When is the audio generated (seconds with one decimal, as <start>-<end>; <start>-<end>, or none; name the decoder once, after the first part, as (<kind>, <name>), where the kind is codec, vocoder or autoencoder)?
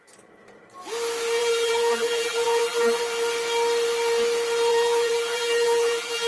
1.4-3.0 (vocoder, BigVGAN v2); 4.7-6.3